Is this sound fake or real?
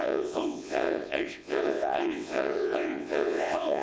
fake